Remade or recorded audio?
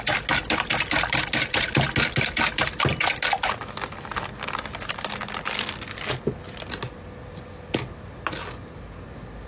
recorded